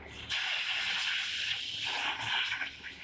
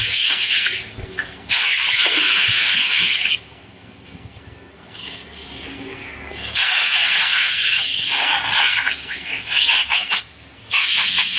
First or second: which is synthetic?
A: second